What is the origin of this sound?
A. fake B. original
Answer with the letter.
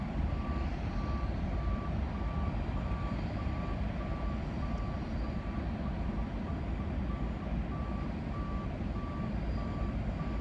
B